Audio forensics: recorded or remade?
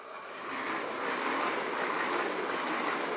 recorded